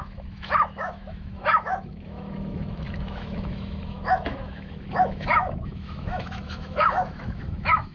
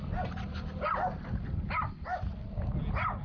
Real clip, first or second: second